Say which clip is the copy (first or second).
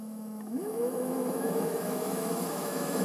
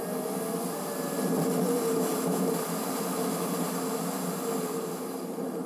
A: first